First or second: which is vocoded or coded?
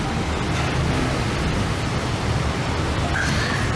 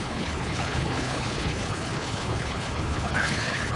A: second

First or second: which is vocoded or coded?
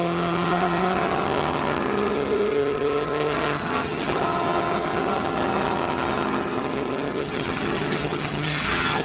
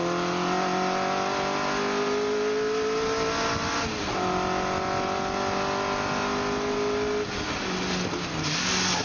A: first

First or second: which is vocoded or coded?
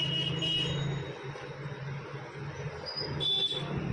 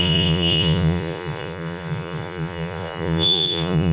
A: second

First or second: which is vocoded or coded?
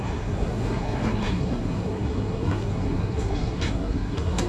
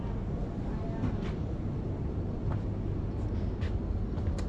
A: first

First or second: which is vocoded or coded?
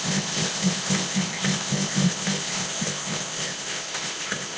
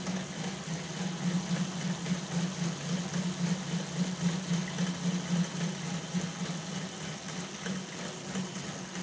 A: first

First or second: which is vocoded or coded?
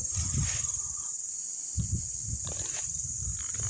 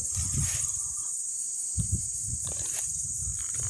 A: second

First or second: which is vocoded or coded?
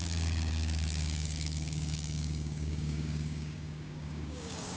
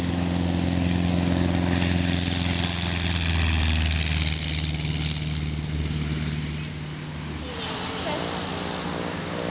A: first